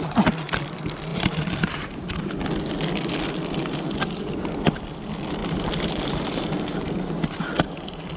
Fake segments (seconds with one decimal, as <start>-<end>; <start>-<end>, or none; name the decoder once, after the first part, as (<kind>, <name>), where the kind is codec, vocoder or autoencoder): 1.1-2.4 (vocoder, BigVGAN v2); 5.4-7.1